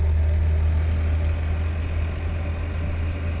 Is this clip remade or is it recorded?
recorded